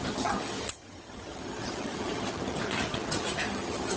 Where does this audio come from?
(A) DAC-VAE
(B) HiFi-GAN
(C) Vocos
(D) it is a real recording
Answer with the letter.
B